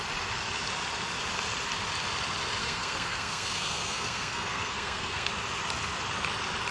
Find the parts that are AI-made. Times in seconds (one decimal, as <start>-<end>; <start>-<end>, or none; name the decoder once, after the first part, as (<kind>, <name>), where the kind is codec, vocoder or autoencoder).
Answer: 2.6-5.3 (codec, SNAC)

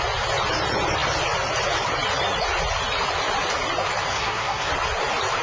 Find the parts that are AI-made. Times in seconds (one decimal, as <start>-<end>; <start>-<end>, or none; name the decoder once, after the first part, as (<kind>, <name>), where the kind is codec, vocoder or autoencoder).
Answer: 4.1-4.7 (codec, SNAC)

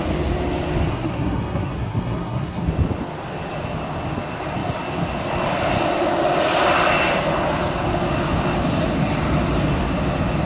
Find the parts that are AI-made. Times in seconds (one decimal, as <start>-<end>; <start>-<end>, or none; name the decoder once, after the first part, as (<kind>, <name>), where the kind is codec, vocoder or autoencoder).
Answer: 0.9-2.7 (codec, SNAC)

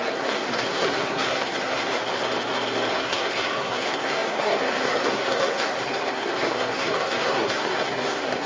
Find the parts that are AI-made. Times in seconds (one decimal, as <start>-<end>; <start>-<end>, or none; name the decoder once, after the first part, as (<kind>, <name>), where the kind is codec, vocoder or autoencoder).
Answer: 0.0-2.0 (codec, SNAC); 2.9-8.5

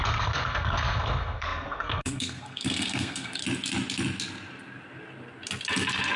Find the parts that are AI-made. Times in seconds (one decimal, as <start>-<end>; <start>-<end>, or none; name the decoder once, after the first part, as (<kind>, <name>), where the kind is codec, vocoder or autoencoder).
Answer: 0.0-3.4 (codec, SNAC)

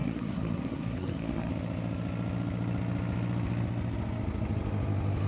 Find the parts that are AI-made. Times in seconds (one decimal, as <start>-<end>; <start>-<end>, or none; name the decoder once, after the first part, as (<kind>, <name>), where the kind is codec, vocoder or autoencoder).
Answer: 0.0-1.5 (codec, SNAC)

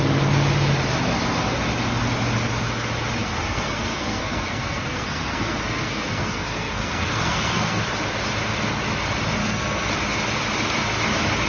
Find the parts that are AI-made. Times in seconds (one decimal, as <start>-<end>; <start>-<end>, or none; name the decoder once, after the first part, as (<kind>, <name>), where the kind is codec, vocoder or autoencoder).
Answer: 3.2-7.8 (codec, SNAC); 9.4-9.9

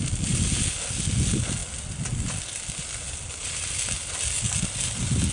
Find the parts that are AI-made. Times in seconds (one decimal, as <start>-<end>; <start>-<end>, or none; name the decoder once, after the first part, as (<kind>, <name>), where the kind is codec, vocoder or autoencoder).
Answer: none